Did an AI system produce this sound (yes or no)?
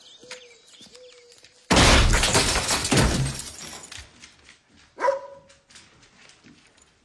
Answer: no